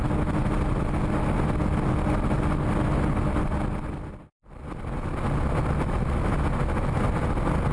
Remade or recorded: recorded